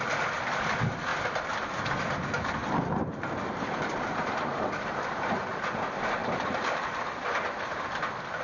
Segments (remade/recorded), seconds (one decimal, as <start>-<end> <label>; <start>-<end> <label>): 0.0-2.6 recorded; 2.6-5.4 remade; 5.4-6.2 recorded; 6.2-7.0 remade; 7.0-8.4 recorded